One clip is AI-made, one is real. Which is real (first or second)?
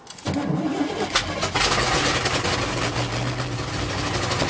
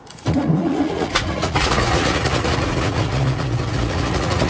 first